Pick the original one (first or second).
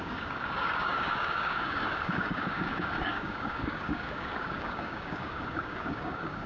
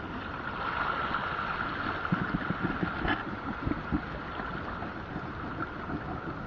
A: second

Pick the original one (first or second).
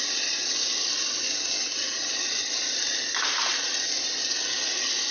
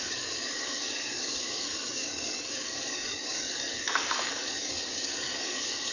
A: first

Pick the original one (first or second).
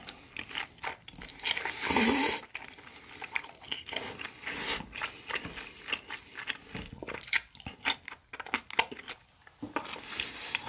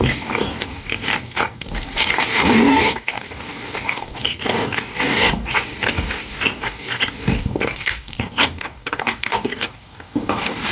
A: first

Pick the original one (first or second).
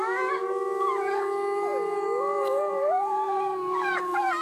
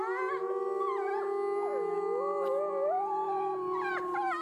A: second